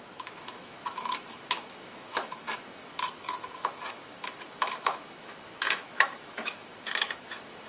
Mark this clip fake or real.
fake